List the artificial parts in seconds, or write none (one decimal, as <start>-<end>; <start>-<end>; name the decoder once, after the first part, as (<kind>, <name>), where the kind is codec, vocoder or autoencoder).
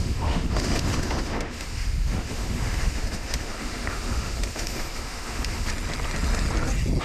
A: 0.0-5.7 (autoencoder, DAC-VAE)